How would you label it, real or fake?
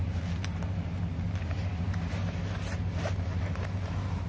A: real